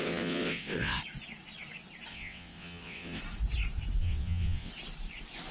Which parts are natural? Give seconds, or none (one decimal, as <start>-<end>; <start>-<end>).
1.0-2.1; 3.2-4.0; 4.7-5.5